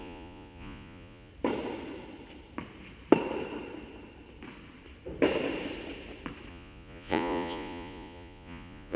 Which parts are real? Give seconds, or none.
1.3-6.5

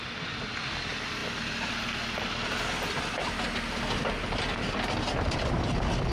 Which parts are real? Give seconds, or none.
0.0-1.2; 4.7-6.1

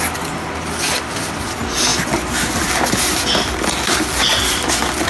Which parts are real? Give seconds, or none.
0.0-5.1